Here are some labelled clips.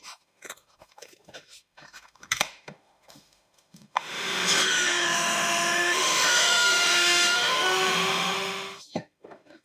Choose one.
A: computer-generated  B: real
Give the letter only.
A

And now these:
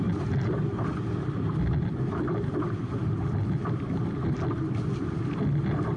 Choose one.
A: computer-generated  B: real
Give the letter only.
B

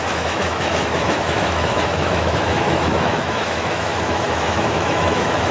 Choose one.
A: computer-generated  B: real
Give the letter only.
A